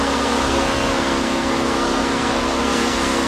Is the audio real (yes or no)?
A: no